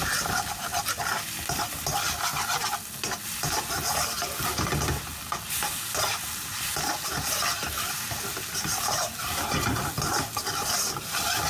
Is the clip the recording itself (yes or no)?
yes